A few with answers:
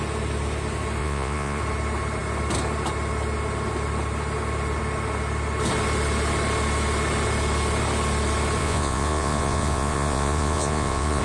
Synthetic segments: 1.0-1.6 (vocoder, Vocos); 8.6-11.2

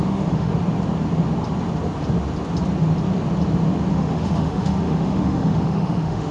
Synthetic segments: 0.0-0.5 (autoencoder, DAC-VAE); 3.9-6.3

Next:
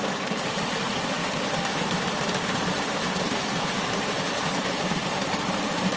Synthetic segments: 0.0-6.0 (vocoder, BigVGAN v2)